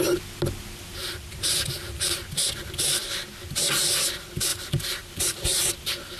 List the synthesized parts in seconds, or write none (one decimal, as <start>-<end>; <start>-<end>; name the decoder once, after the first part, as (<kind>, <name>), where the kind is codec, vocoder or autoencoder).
0.9-2.1 (vocoder, BigVGAN v2); 4.5-5.7